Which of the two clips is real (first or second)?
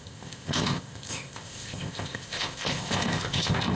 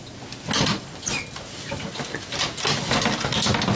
second